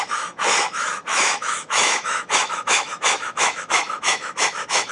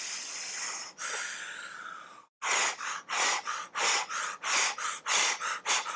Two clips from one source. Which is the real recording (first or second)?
second